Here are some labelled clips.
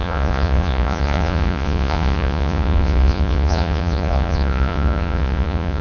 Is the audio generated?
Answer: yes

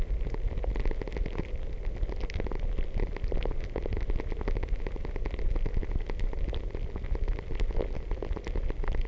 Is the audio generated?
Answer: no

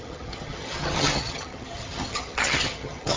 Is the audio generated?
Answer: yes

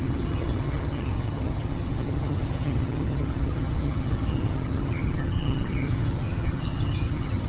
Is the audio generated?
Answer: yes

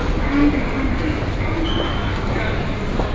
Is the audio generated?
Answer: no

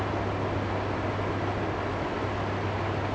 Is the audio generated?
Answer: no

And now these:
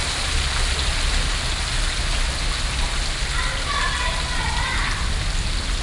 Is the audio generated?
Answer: no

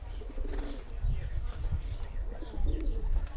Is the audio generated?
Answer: no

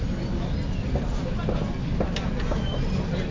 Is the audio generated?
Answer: no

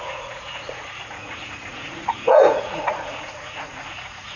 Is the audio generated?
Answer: yes